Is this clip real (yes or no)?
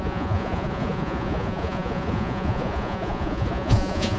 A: no